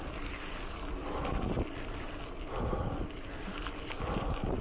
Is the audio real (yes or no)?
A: yes